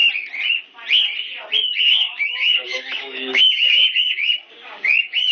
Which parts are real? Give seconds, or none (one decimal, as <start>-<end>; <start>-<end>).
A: 0.0-1.8